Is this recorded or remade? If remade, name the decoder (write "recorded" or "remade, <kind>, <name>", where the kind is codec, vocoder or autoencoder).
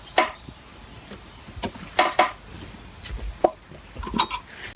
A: recorded